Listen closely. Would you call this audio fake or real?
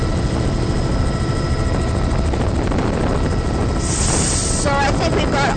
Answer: real